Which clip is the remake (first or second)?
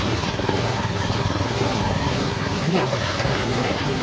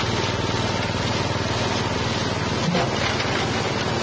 first